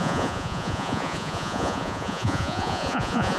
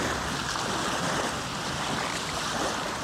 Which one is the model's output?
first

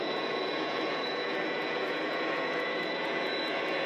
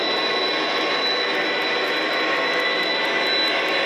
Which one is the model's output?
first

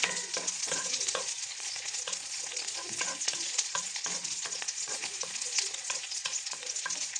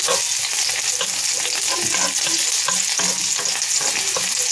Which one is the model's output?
first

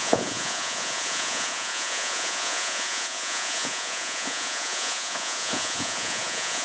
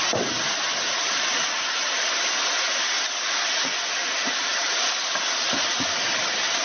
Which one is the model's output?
first